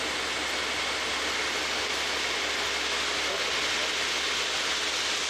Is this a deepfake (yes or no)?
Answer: no